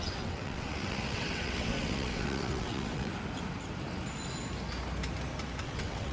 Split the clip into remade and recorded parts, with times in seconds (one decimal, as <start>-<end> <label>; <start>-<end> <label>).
0.0-3.1 remade; 3.1-5.6 recorded; 5.6-6.1 remade